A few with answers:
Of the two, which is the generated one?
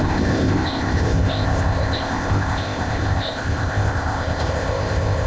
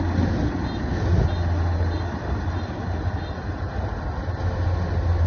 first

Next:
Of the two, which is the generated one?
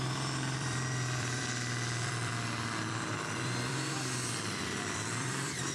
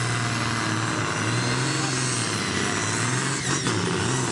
first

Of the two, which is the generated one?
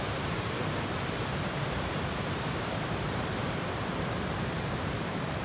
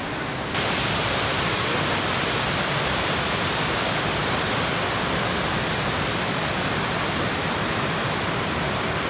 first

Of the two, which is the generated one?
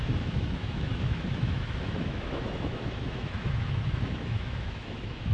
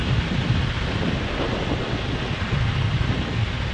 first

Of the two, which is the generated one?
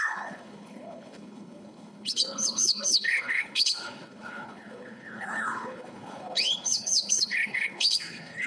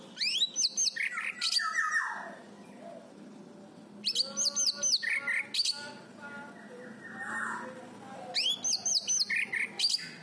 first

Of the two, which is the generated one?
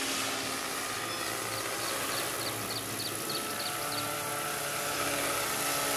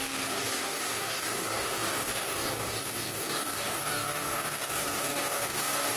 second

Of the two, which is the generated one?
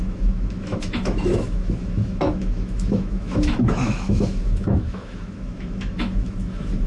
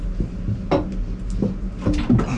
first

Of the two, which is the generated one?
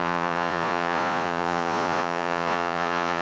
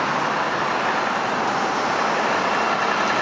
first